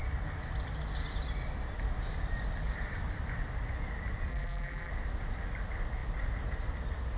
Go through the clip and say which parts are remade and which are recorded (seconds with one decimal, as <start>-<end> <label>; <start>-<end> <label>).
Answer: 0.0-4.3 recorded; 4.3-4.9 remade; 4.9-7.2 recorded

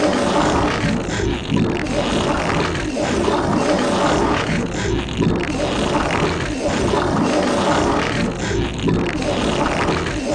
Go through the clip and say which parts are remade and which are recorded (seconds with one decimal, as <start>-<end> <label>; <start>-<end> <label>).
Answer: 0.0-4.2 recorded; 4.2-4.7 remade; 4.7-10.3 recorded

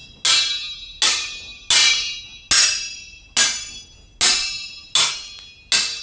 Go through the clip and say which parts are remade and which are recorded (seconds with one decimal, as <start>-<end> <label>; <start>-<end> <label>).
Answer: 0.0-6.0 recorded